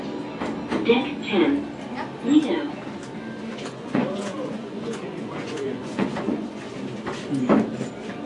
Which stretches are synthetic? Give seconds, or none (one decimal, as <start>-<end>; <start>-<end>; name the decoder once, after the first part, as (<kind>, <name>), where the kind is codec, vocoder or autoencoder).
3.5-6.7 (vocoder, Vocos)